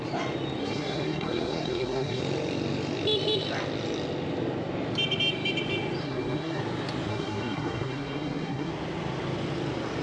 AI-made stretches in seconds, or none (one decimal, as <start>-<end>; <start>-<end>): 0.6-2.2; 6.0-6.6; 7.1-8.7